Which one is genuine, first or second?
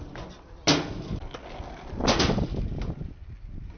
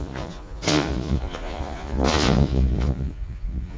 first